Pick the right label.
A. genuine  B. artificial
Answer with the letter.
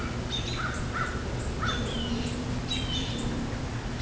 A